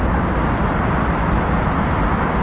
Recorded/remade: recorded